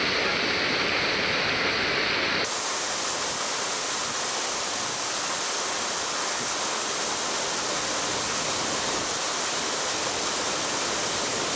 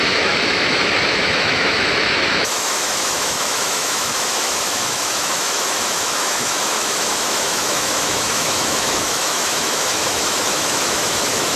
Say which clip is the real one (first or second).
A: first